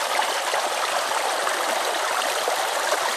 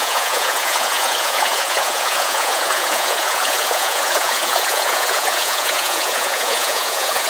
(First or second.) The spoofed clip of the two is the second